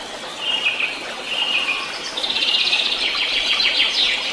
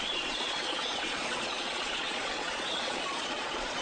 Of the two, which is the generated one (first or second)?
second